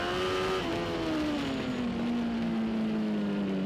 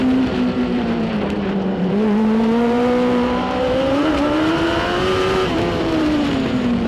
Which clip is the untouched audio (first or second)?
first